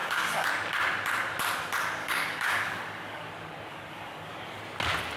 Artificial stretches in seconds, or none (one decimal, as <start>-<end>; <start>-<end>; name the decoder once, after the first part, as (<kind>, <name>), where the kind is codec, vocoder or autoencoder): 0.0-0.5 (codec, DAC); 2.0-3.3; 3.7-4.6